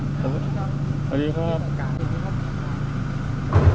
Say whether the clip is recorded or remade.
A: recorded